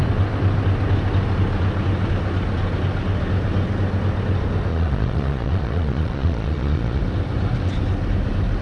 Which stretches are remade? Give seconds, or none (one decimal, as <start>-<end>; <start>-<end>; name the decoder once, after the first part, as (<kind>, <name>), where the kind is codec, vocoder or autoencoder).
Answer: 4.7-7.0 (vocoder, Vocos)